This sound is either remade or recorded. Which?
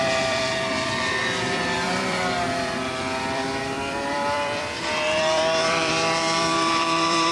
remade